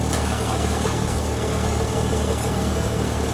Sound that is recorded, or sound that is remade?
remade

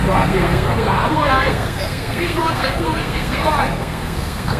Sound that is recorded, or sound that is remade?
remade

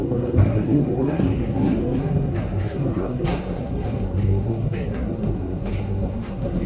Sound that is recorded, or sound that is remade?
remade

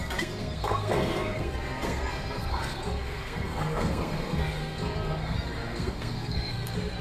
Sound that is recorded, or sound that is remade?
remade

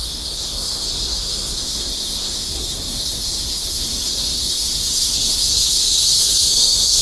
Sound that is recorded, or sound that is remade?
remade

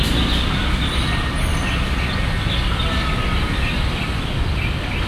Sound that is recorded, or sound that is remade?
recorded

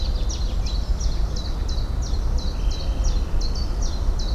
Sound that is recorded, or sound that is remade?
recorded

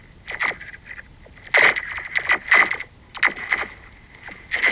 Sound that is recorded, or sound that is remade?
recorded